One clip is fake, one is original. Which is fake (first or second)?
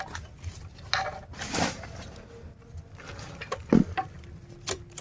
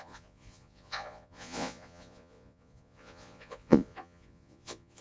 second